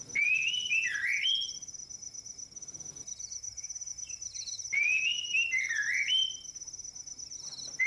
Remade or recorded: recorded